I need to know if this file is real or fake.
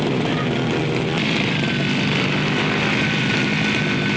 real